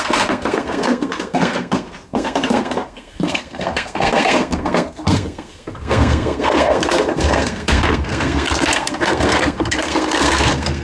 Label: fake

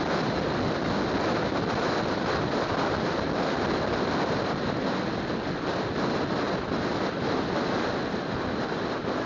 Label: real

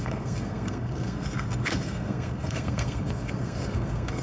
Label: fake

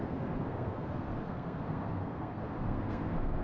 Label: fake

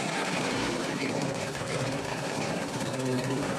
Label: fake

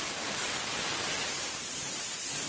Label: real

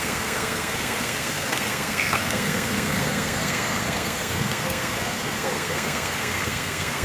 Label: fake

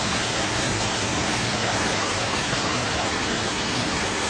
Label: fake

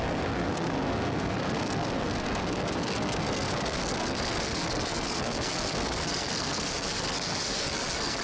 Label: fake